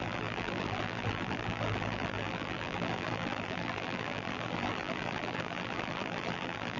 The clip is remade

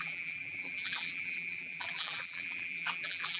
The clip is remade